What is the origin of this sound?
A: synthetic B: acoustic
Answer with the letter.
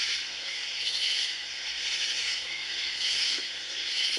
A